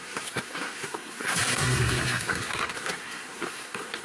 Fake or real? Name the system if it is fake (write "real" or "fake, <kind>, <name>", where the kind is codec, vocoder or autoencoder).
fake, codec, SNAC